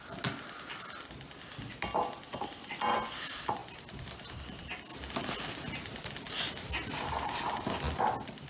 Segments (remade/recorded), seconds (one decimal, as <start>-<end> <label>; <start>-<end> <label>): 0.0-8.5 recorded

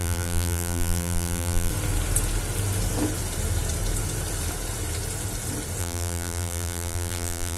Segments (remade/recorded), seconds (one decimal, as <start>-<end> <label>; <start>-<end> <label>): 0.0-1.7 remade; 1.7-5.8 recorded; 5.8-7.6 remade

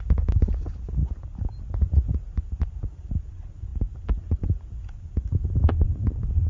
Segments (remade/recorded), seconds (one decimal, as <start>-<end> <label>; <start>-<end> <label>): 0.0-6.5 remade

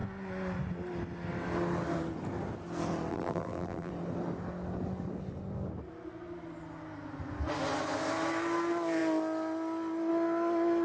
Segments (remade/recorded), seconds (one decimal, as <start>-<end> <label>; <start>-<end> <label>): 0.0-3.1 recorded; 3.1-3.9 remade; 3.9-10.8 recorded

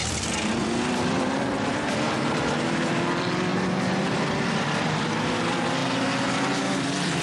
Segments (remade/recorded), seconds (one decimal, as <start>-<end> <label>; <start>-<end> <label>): 0.0-5.8 remade; 5.8-6.6 recorded; 6.6-7.2 remade

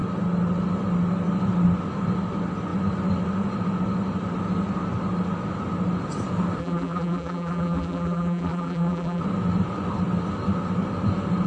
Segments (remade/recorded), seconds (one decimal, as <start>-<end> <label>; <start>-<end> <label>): 0.0-6.6 recorded; 6.6-9.2 remade; 9.2-11.5 recorded